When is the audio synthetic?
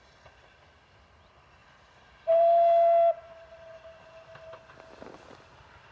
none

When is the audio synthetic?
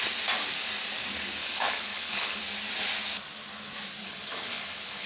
1.4-2.4; 4.0-5.1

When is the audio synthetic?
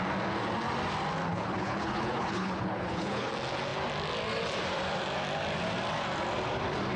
1.3-3.3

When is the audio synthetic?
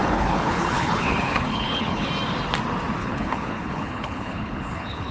0.0-2.1; 3.0-5.1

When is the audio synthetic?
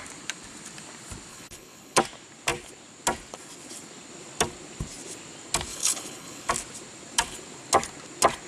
1.3-2.0; 5.7-6.5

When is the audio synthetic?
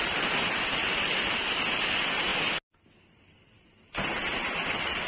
none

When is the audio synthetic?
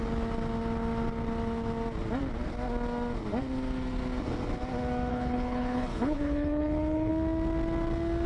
5.1-7.1